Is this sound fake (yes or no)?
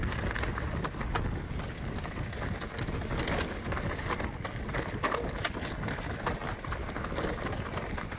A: no